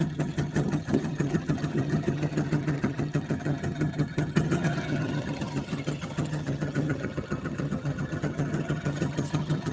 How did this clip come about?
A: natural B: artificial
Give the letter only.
B